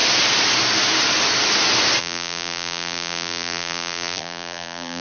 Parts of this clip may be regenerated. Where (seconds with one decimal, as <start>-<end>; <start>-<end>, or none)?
2.0-5.0

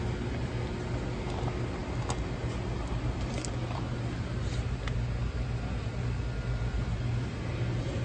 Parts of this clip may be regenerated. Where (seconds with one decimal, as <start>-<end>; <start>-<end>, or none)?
none